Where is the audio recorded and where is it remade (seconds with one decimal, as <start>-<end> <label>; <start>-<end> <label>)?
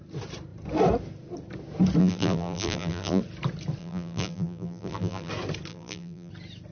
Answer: 0.0-2.0 recorded; 2.0-3.2 remade; 3.2-3.8 recorded; 3.8-5.3 remade; 5.3-5.7 recorded; 5.7-6.3 remade; 6.3-6.7 recorded